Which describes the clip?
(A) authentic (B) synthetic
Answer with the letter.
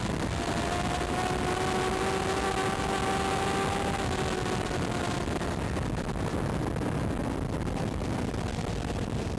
A